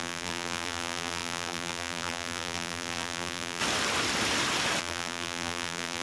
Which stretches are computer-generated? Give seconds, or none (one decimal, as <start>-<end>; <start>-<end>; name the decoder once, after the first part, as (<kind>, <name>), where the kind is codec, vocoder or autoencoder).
0.0-3.6 (vocoder, BigVGAN v2); 4.8-6.0